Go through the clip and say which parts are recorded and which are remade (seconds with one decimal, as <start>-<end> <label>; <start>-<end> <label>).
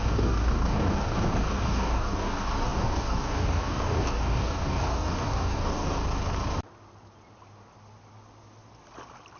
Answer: 0.0-6.0 remade; 6.0-9.4 recorded